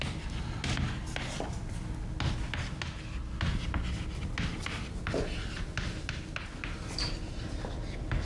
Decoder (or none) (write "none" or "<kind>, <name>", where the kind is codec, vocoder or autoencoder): none